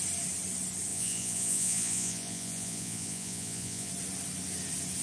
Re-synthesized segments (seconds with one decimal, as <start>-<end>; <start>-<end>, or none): 0.9-3.9